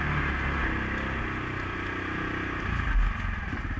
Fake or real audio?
real